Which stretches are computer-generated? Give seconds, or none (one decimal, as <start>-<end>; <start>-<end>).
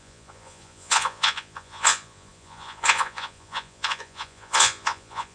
0.0-5.3